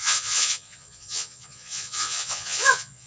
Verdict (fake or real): fake